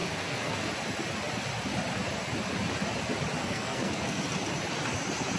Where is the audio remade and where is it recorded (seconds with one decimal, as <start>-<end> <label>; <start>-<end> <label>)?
0.0-0.7 remade; 0.7-3.4 recorded; 3.4-4.2 remade; 4.2-5.4 recorded